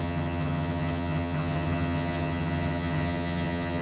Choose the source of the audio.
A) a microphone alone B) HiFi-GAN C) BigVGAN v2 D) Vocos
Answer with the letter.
B